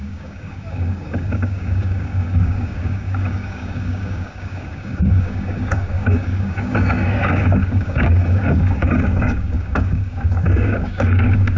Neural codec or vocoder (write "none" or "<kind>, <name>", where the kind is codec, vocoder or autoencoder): codec, DAC